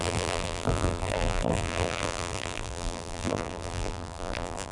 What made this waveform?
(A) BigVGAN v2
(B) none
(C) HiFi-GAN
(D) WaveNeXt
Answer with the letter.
A